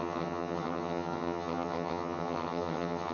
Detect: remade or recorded remade